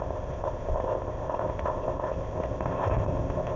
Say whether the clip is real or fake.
fake